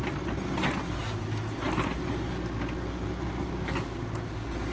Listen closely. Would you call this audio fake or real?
real